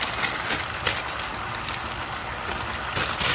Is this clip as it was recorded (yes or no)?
yes